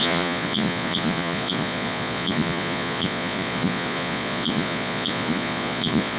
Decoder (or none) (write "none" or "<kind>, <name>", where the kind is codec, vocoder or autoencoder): vocoder, Vocos